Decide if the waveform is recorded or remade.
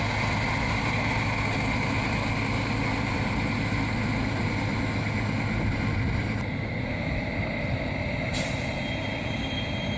recorded